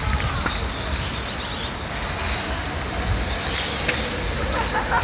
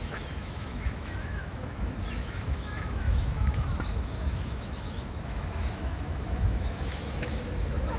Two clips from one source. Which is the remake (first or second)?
second